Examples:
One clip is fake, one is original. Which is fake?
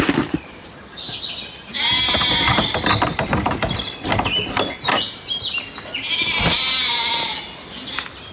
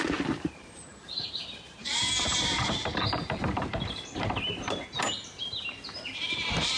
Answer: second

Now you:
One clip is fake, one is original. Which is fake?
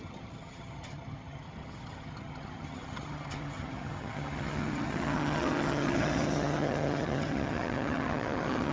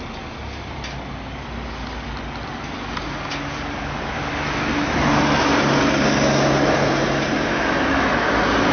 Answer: first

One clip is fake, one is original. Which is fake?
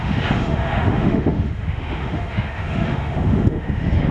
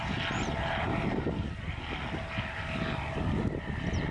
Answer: first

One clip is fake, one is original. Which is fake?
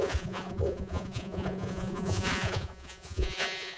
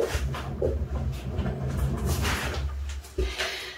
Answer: first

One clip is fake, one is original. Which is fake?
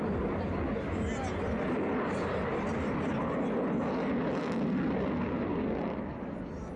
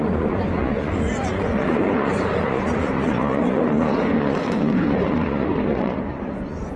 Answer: second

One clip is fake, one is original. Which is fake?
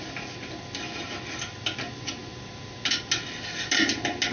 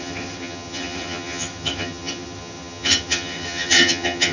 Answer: second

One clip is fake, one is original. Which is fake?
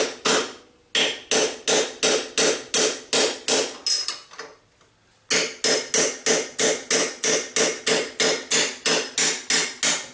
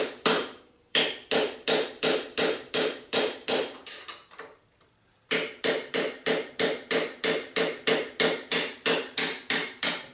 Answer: second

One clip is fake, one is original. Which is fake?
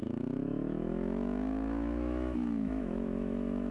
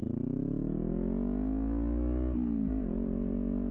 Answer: first